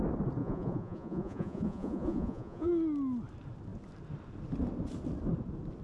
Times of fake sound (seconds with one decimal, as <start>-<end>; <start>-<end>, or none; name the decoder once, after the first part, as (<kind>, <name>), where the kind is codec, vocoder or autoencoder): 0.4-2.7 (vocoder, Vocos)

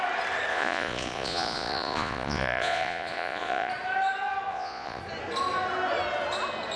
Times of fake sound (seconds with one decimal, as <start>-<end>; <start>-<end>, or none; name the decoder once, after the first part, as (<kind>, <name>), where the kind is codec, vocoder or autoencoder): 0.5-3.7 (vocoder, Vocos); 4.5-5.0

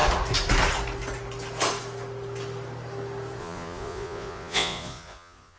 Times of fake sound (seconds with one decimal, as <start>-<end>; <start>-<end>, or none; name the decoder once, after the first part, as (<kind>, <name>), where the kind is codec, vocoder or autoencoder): 3.4-5.6 (vocoder, Vocos)

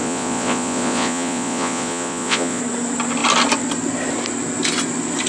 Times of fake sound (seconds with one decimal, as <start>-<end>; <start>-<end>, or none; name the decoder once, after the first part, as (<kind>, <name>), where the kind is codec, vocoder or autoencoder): 0.0-2.6 (vocoder, Vocos)

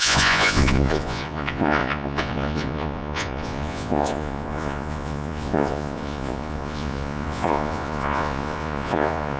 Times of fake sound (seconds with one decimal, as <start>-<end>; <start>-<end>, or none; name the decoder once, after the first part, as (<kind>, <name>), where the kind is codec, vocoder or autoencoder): 0.0-9.4 (vocoder, Vocos)